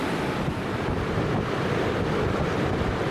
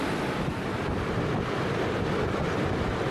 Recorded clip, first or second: second